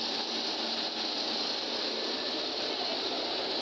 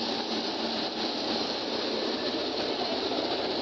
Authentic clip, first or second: first